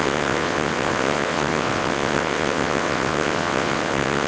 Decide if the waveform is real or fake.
fake